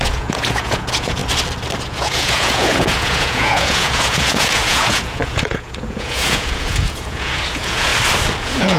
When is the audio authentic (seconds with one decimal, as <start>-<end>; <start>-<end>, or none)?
1.2-1.8; 7.9-8.4